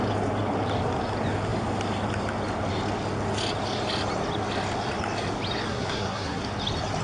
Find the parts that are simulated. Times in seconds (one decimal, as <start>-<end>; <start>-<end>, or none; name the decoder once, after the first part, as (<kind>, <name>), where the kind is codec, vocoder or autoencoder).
5.7-6.4 (codec, SNAC)